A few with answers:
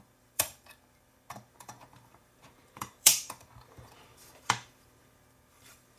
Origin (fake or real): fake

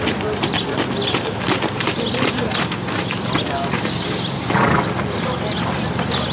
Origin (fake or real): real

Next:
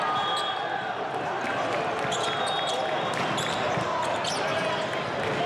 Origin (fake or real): real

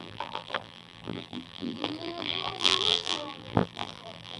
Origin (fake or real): fake